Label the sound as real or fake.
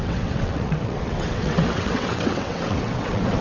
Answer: fake